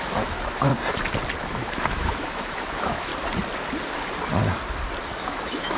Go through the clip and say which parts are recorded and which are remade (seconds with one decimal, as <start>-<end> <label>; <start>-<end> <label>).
0.0-0.7 remade; 0.7-1.4 recorded; 1.4-3.1 remade; 3.1-5.1 recorded; 5.1-5.8 remade